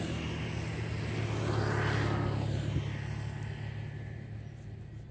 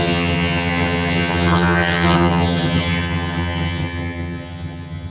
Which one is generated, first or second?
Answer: second